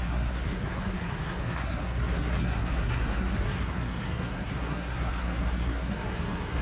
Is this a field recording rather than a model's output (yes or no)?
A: no